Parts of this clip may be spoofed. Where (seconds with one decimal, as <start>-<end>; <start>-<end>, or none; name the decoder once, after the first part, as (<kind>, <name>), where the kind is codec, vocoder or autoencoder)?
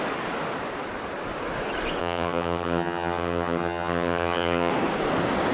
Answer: 2.0-4.7 (vocoder, HiFi-GAN)